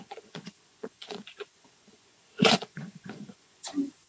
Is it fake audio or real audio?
fake